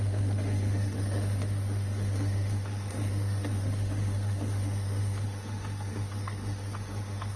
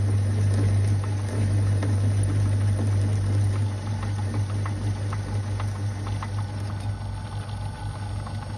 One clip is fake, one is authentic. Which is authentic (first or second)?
second